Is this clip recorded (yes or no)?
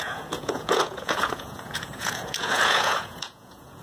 no